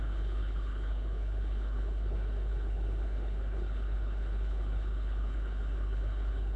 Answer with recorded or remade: remade